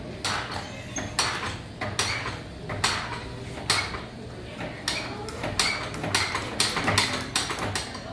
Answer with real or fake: real